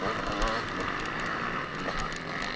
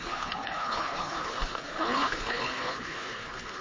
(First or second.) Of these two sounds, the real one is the first